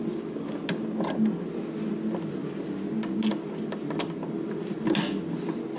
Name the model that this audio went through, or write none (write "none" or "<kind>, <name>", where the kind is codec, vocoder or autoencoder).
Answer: none